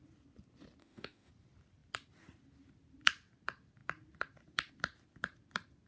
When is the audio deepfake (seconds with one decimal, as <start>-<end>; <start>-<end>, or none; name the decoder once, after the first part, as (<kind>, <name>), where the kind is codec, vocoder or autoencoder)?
0.8-1.3 (autoencoder, DAC-VAE)